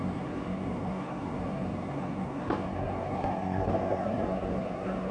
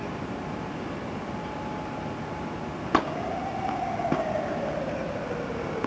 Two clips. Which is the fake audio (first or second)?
first